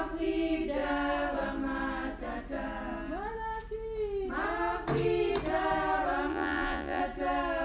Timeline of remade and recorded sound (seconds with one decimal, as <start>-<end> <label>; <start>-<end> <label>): 0.0-6.3 recorded; 6.3-7.0 remade; 7.0-7.6 recorded